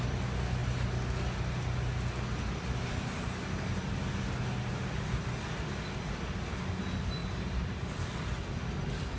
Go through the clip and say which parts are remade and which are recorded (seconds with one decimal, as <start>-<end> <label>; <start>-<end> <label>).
0.0-7.2 recorded; 7.2-7.8 remade; 7.8-9.2 recorded